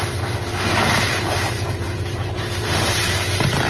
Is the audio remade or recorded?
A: remade